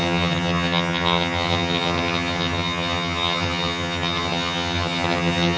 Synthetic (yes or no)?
yes